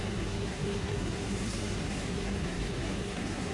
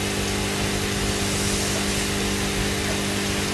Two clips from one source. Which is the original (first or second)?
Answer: second